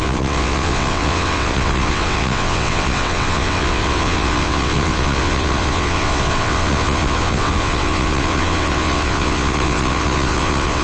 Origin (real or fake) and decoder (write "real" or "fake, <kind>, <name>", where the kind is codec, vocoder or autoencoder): fake, vocoder, WaveNeXt